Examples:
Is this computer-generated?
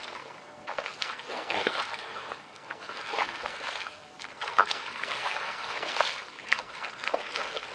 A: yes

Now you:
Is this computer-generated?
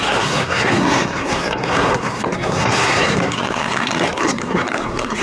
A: yes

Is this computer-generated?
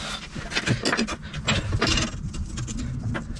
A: no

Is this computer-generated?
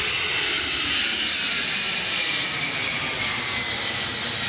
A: no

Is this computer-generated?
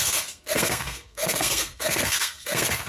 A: yes